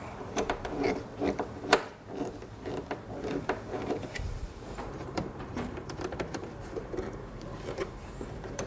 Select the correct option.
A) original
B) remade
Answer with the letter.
B